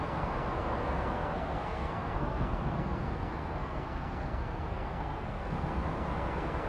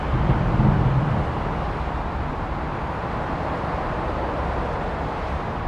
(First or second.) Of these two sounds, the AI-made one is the first